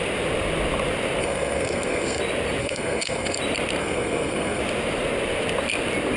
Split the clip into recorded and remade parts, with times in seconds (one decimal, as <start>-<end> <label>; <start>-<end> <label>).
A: 0.0-1.2 recorded; 1.2-2.2 remade; 2.2-2.6 recorded; 2.6-3.4 remade; 3.4-3.8 recorded; 3.8-4.6 remade; 4.6-6.2 recorded